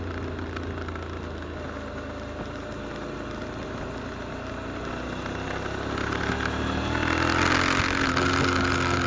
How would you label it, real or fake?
real